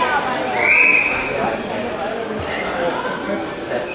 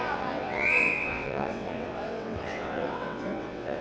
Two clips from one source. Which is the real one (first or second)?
first